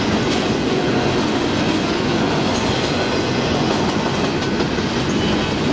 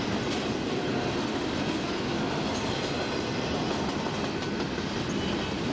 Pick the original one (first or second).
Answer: second